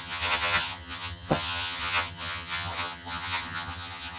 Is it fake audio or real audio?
fake